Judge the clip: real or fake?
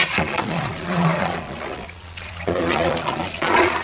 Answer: fake